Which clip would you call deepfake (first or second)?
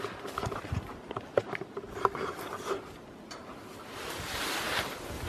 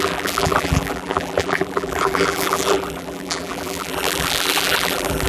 second